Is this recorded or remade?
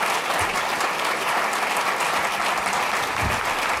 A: recorded